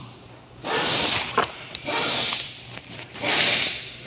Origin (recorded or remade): recorded